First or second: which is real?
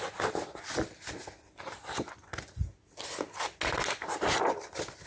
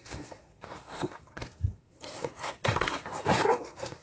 first